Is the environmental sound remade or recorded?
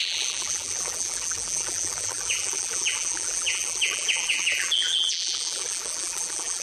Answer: remade